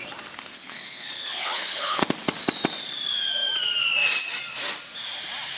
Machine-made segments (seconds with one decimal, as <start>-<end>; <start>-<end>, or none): 0.5-2.0